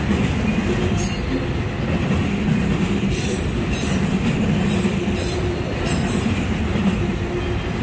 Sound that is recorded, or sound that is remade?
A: recorded